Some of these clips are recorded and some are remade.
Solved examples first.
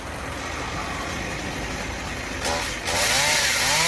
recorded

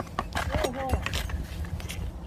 recorded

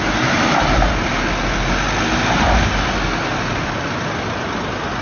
recorded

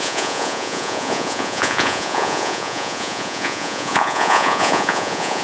remade